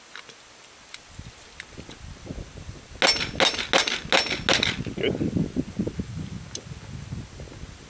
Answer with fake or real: real